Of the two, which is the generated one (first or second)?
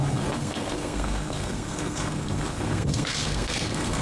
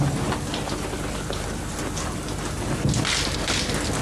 first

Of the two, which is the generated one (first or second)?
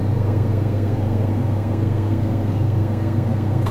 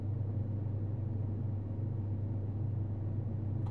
first